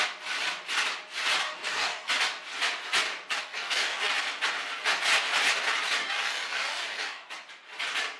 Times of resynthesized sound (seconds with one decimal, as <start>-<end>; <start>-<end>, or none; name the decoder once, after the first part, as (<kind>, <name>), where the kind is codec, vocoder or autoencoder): 1.4-2.1 (codec, DAC); 3.4-4.1; 6.0-7.3